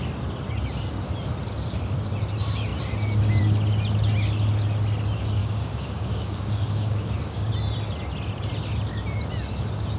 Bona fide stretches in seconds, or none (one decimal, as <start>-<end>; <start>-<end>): 0.0-5.4; 7.5-10.0